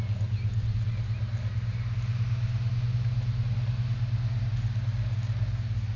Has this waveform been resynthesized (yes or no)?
no